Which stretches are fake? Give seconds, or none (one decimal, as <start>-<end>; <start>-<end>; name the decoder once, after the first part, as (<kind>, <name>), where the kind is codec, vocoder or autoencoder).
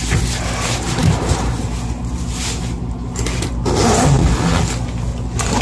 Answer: none